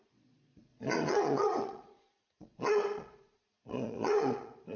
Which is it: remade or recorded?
remade